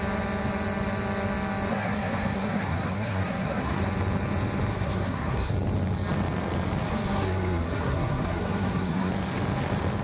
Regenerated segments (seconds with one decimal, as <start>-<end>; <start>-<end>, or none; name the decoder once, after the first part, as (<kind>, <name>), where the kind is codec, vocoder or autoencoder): 1.7-3.8 (codec, SNAC); 4.7-5.5; 6.9-9.1